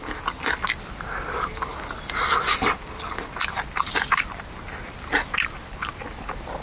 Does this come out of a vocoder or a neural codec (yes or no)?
no